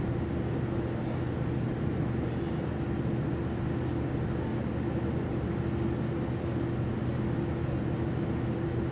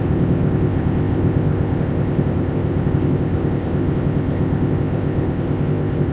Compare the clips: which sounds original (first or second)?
first